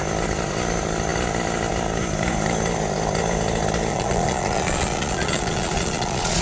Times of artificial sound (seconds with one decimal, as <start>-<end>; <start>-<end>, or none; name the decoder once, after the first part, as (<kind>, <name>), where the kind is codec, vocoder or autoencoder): 3.9-6.4 (vocoder, Vocos)